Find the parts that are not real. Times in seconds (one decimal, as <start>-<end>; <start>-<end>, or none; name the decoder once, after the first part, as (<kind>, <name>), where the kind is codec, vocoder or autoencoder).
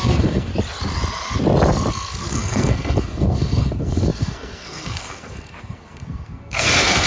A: 0.0-0.5 (codec, SNAC); 1.9-7.1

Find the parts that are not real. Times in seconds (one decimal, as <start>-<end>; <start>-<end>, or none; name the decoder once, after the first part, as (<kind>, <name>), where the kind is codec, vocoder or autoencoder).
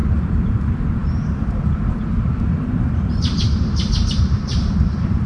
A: 1.9-5.3 (vocoder, BigVGAN v2)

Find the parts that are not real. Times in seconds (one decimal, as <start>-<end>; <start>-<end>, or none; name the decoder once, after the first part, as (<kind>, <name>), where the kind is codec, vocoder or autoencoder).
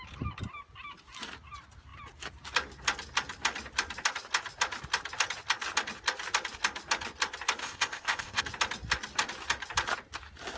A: 7.6-8.4 (codec, ZipCodec)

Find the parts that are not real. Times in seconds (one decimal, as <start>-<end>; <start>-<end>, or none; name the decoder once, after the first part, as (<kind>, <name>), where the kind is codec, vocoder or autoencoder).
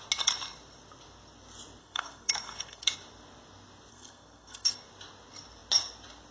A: 1.8-2.9 (codec, SNAC); 3.9-4.7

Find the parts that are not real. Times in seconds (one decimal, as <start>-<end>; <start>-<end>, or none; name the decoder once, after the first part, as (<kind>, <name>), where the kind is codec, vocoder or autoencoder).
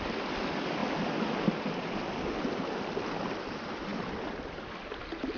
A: none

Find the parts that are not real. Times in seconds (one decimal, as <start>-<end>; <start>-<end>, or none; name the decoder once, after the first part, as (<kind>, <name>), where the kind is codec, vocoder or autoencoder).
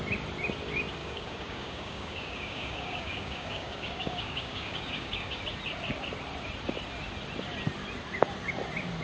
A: 1.0-5.4 (codec, DAC)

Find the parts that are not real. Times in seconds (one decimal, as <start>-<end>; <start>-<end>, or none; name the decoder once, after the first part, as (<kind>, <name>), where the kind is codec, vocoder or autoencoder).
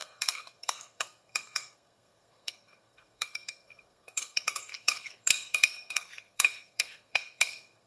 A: 0.0-7.9 (codec, SNAC)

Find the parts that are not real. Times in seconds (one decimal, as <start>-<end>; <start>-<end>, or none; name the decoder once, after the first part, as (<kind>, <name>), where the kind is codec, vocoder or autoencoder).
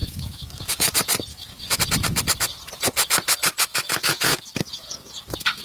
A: 0.0-0.9 (autoencoder, DAC-VAE); 1.3-1.8; 3.7-5.6